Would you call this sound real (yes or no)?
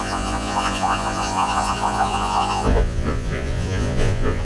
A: no